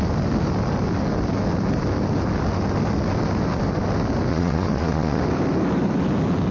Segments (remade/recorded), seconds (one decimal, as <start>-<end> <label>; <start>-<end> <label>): 0.0-4.3 recorded; 4.3-5.2 remade; 5.2-6.5 recorded